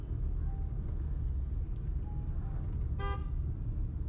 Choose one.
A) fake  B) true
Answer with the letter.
B